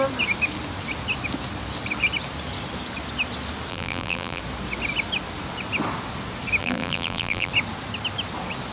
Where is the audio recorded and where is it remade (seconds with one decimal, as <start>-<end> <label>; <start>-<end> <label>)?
0.0-3.7 recorded; 3.7-4.4 remade; 4.4-6.6 recorded; 6.6-7.5 remade; 7.5-8.7 recorded